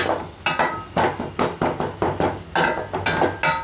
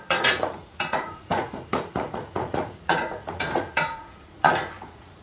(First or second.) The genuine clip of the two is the first